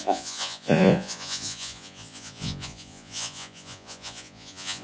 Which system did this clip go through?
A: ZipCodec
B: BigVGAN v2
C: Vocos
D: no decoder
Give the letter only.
C